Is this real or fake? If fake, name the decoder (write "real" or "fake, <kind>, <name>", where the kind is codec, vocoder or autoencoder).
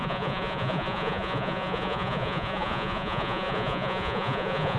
fake, vocoder, Vocos